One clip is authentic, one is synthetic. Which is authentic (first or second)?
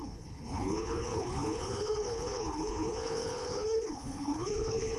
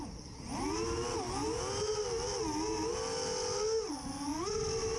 second